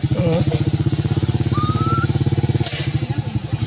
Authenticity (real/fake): real